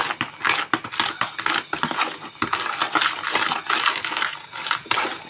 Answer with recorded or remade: recorded